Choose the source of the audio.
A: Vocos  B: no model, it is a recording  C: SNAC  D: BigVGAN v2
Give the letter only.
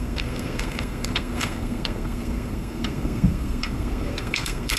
C